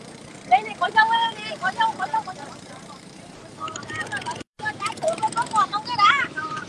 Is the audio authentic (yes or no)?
no